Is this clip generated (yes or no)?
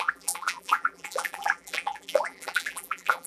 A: yes